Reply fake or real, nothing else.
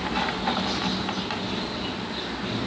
real